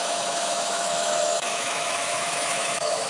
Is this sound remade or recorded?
remade